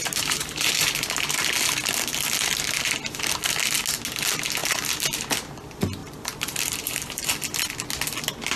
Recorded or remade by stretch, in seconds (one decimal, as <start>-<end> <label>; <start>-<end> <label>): 0.0-0.7 remade; 0.7-4.6 recorded; 4.6-5.3 remade; 5.3-6.0 recorded; 6.0-7.2 remade; 7.2-8.6 recorded